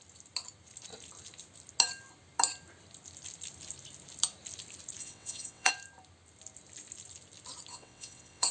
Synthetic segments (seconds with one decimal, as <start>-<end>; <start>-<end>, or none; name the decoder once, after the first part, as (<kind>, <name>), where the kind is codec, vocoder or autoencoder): 5.0-5.7 (vocoder, WaveNeXt); 7.7-8.5